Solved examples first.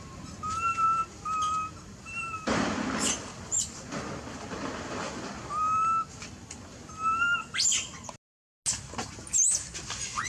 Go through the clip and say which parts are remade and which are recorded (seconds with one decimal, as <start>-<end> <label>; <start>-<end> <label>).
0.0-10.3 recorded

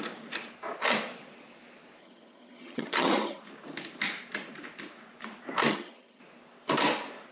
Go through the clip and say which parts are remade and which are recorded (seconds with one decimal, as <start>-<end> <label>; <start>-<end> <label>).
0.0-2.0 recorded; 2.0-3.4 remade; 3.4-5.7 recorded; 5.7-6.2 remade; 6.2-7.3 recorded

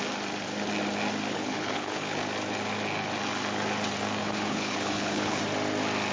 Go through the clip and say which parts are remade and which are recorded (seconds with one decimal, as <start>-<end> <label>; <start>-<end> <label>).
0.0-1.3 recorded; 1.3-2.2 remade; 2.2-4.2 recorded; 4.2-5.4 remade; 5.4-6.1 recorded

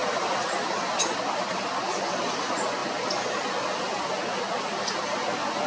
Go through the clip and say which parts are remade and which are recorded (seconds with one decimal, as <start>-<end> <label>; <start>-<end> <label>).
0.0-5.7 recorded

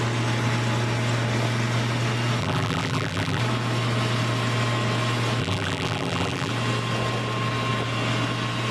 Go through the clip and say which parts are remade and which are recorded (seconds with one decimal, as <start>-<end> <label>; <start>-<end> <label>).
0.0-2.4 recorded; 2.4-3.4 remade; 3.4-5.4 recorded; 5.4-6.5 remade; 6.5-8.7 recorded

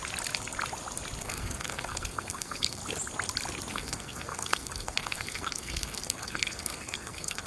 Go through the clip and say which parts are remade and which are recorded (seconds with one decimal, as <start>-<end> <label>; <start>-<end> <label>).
0.0-1.2 recorded; 1.2-2.8 remade; 2.8-3.7 recorded; 3.7-7.5 remade